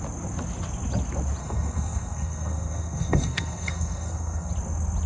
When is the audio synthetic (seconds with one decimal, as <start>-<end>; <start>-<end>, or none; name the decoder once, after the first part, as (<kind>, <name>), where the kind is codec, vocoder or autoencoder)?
1.4-4.5 (codec, SNAC)

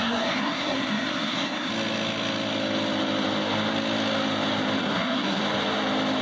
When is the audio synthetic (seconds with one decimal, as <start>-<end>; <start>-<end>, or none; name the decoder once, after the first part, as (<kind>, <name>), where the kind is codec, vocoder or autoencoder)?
0.0-1.7 (codec, SNAC); 4.8-5.4

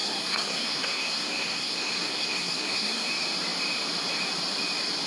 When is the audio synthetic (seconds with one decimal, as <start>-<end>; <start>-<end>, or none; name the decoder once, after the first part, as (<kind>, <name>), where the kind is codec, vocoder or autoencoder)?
0.0-3.1 (codec, SNAC)

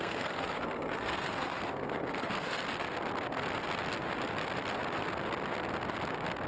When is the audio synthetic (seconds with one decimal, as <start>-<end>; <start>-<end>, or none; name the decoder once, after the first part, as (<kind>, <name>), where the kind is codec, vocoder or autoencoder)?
0.0-2.6 (codec, SNAC)

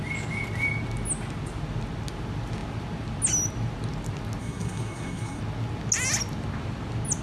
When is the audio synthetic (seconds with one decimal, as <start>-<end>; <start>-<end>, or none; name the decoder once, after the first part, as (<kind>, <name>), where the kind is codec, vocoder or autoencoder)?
4.4-5.4 (codec, SNAC)